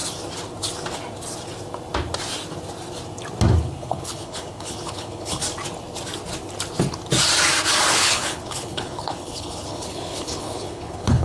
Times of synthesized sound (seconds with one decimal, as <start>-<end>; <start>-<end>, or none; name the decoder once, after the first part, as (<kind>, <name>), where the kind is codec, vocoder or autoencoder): 3.6-5.4 (codec, HILCodec); 7.9-11.2